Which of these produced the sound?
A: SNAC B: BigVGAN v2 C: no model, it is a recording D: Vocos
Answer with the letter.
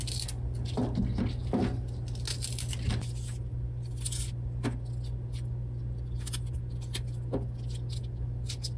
C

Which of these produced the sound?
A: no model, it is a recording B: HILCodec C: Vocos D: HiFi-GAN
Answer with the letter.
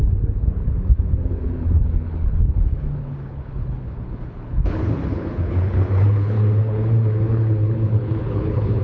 B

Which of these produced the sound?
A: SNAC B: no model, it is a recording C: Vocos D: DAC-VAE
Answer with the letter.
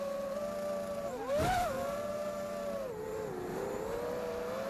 B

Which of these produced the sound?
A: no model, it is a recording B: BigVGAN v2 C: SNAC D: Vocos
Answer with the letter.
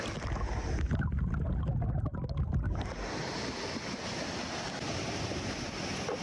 A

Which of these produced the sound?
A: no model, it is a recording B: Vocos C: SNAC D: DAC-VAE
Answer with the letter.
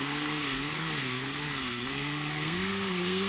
C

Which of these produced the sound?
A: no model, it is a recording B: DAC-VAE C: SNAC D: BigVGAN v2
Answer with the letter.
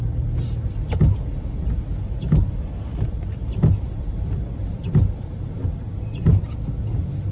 A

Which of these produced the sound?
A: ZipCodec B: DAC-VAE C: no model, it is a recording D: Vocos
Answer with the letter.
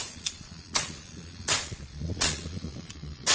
D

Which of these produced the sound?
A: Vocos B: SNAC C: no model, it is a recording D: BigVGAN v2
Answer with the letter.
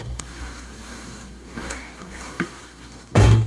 B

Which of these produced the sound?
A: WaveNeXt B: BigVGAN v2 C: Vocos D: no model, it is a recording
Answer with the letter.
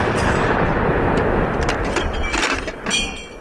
D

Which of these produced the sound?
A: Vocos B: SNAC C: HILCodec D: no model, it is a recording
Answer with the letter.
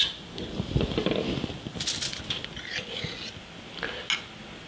D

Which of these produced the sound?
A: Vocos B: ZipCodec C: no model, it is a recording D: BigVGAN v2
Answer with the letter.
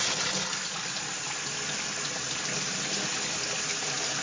C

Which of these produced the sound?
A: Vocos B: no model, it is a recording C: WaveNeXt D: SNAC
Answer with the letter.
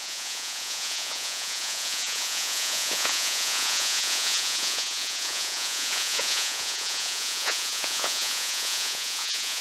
A